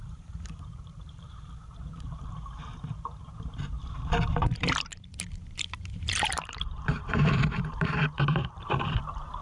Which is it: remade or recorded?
remade